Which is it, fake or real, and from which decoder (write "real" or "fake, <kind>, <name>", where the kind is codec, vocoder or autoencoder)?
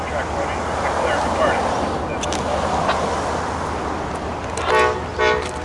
real